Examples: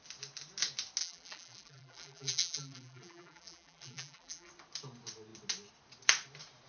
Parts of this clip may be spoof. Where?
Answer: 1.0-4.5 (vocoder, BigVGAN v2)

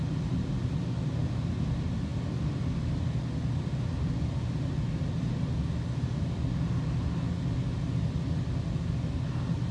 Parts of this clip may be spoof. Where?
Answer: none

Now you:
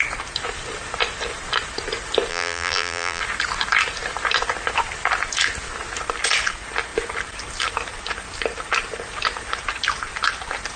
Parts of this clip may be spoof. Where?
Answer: 2.3-3.2 (vocoder, BigVGAN v2)